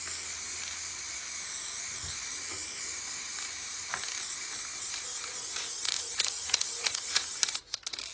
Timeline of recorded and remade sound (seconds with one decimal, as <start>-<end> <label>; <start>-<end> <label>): 0.0-5.5 recorded; 5.5-7.3 remade; 7.3-8.1 recorded